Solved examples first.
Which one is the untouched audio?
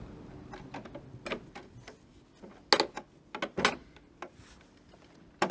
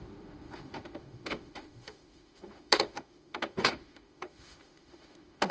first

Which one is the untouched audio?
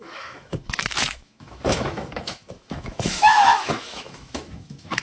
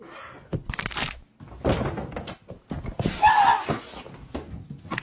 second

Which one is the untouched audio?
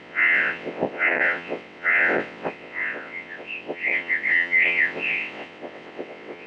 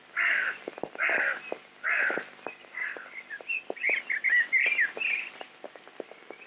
second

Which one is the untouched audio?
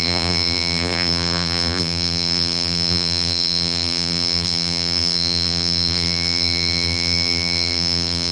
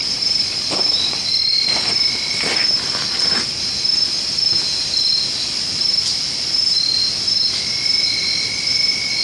second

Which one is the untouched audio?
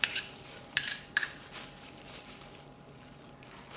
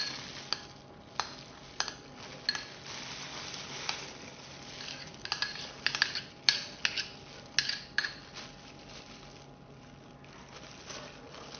second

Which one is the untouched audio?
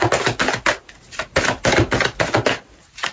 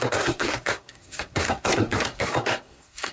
first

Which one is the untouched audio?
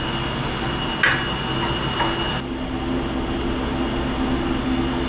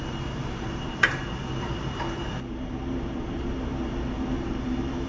first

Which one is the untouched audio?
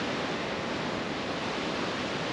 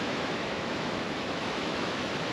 first